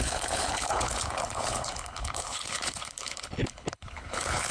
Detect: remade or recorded remade